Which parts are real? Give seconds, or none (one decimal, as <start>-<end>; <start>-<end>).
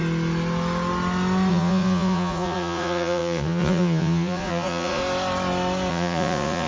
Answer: 0.0-1.5; 5.0-5.9